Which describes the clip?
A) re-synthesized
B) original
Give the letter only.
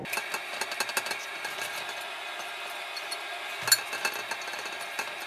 B